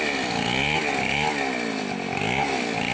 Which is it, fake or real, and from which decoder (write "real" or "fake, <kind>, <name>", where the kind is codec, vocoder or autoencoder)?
real